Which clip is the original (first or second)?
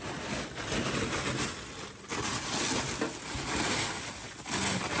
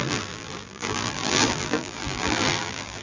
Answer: first